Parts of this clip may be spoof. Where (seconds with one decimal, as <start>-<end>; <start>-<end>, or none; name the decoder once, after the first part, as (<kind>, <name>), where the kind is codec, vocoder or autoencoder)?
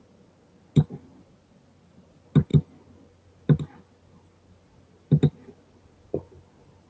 none